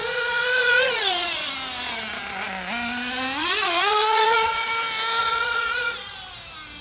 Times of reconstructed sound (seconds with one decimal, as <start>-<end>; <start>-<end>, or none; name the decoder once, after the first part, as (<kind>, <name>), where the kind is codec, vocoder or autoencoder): 0.0-1.5 (vocoder, Vocos); 3.4-4.7; 5.2-6.1